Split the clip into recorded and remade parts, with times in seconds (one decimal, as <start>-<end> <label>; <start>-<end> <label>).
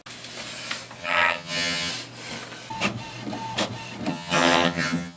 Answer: 0.0-1.0 recorded; 1.0-1.9 remade; 1.9-4.1 recorded; 4.1-5.2 remade